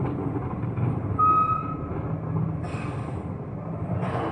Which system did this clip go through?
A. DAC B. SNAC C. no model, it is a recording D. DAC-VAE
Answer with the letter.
C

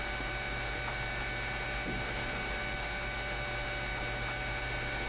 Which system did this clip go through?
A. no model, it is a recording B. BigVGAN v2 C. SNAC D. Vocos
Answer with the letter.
A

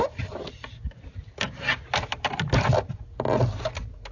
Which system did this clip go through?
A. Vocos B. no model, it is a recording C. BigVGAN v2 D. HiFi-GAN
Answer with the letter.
B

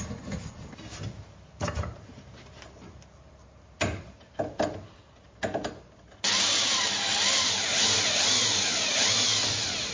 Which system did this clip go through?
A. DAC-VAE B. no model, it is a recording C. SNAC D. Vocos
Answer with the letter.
B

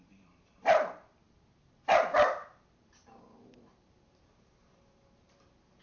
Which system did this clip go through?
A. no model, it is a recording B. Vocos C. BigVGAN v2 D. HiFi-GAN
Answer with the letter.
C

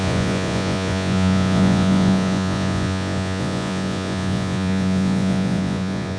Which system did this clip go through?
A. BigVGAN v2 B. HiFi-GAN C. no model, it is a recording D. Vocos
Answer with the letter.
D